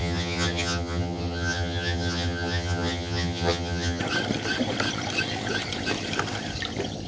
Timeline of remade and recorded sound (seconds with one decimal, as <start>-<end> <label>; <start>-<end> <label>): 0.0-4.0 remade; 4.0-7.1 recorded